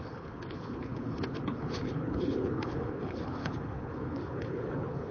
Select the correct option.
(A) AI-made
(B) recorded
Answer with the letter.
A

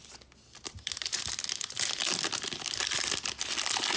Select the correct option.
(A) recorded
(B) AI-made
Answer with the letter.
A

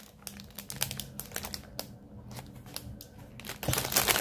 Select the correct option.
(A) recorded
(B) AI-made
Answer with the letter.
A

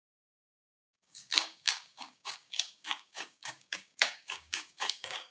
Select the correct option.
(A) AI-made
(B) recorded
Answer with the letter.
A